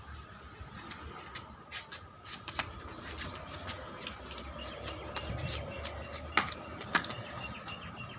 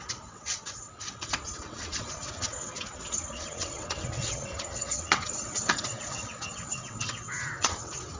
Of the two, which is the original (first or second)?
first